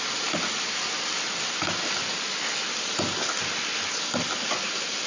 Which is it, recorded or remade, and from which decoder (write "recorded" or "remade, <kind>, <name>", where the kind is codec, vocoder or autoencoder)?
recorded